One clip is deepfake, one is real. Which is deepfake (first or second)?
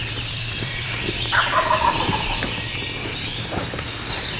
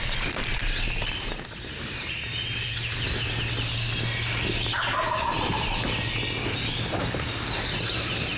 first